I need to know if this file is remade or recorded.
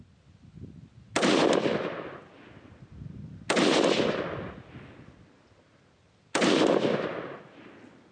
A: recorded